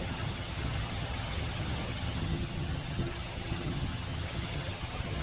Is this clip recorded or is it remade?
remade